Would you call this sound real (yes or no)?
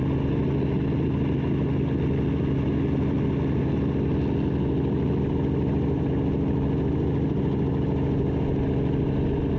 yes